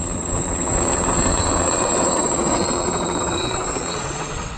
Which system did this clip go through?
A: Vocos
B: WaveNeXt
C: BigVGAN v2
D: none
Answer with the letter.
B